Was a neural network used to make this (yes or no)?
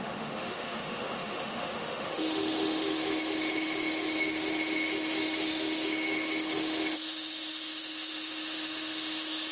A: yes